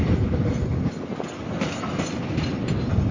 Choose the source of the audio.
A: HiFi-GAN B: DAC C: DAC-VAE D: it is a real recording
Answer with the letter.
D